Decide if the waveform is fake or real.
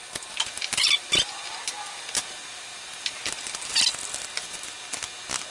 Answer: real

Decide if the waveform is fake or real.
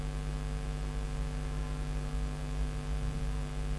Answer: real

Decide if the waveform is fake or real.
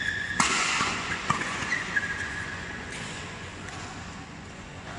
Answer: fake